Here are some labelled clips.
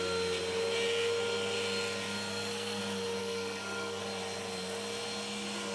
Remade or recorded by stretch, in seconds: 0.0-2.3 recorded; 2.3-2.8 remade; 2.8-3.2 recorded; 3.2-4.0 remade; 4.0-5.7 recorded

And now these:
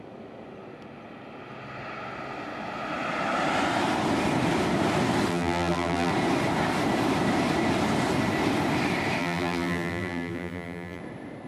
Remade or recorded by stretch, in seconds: 0.0-5.3 recorded; 5.3-6.1 remade; 6.1-9.2 recorded; 9.2-11.0 remade; 11.0-11.5 recorded

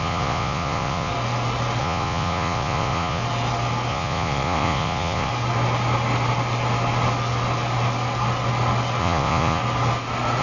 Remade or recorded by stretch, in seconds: 0.0-1.1 remade; 1.1-1.8 recorded; 1.8-3.2 remade; 3.2-3.9 recorded; 3.9-5.3 remade; 5.3-9.0 recorded; 9.0-9.6 remade; 9.6-10.4 recorded